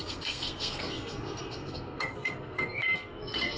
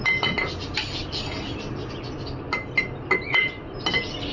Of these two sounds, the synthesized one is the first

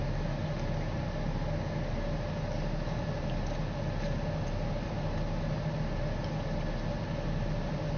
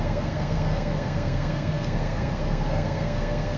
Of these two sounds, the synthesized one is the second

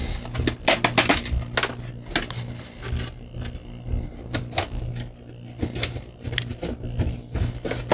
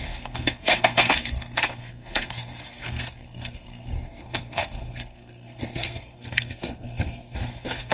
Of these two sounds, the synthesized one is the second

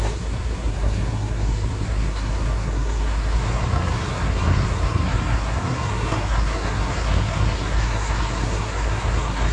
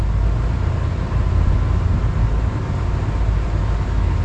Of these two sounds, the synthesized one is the first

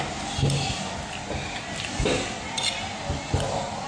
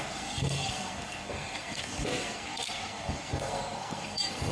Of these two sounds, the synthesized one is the second